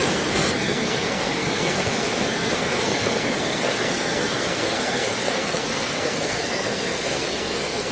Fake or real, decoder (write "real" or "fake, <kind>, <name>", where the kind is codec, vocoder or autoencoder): fake, codec, SNAC